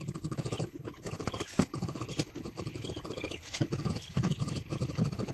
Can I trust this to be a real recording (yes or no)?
no